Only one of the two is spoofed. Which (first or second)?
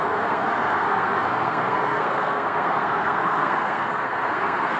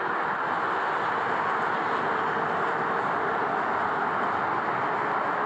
first